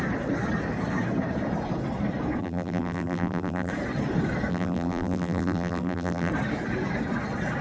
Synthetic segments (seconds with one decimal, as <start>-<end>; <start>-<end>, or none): 2.4-3.7; 4.5-6.3